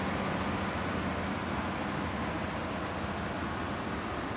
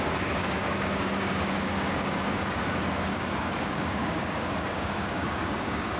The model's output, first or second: second